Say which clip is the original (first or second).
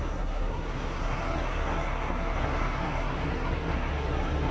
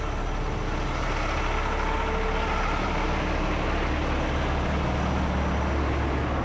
second